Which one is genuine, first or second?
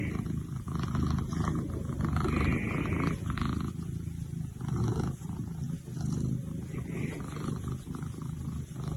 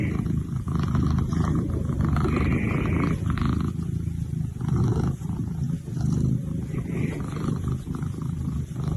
first